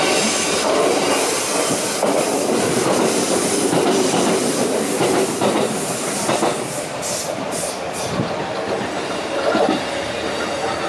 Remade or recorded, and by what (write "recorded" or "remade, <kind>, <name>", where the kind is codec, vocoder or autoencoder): recorded